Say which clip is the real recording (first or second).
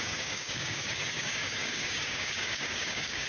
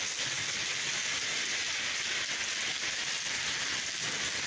second